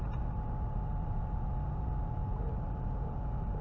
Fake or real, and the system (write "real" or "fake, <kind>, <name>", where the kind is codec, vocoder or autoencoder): real